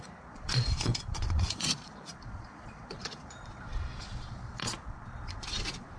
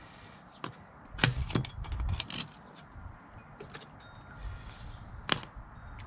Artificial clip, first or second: first